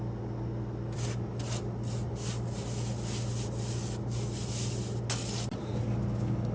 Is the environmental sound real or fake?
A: real